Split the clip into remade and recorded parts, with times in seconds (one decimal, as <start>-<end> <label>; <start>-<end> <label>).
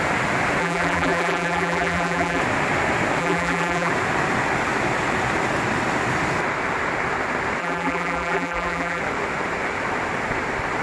0.0-0.6 recorded; 0.6-2.4 remade; 2.4-3.2 recorded; 3.2-3.9 remade; 3.9-7.6 recorded; 7.6-9.0 remade; 9.0-10.8 recorded